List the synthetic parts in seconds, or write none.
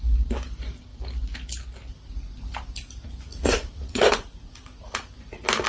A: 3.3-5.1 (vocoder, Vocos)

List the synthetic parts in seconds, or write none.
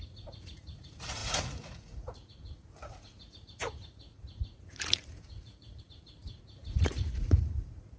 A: 0.0-8.0 (vocoder, Vocos)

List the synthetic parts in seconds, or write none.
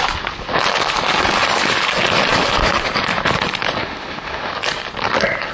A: 3.8-4.5 (autoencoder, DAC-VAE)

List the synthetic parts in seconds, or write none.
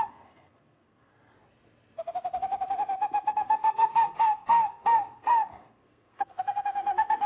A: 0.0-1.1 (codec, SNAC); 3.3-7.3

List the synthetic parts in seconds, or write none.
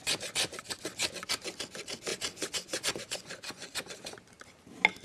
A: 2.1-3.7 (vocoder, Vocos)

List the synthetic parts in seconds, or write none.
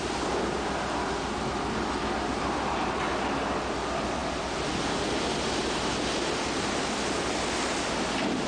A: none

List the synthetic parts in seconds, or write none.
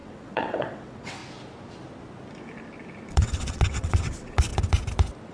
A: 0.0-1.2 (vocoder, WaveNeXt); 3.1-4.5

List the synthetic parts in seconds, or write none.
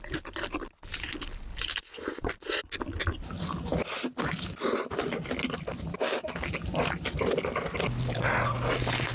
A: none